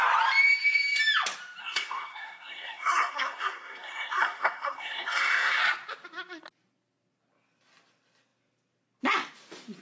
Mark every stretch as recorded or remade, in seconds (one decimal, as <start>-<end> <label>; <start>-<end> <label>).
0.0-1.6 recorded; 1.6-5.6 remade; 5.6-9.8 recorded